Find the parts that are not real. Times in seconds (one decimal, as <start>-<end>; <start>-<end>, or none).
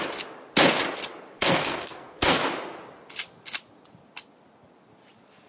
1.4-2.4